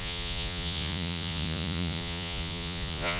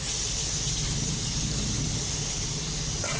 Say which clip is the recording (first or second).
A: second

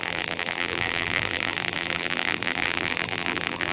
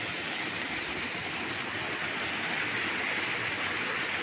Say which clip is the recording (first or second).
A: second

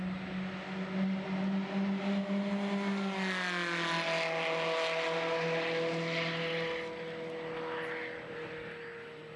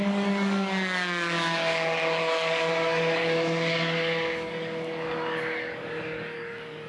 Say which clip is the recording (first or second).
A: first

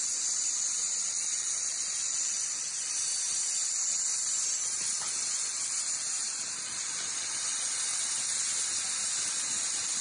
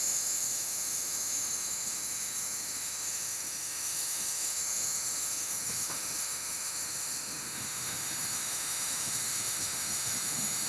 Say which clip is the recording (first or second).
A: first